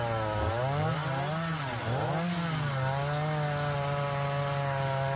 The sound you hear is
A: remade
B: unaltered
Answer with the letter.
B